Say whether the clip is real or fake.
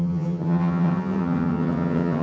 fake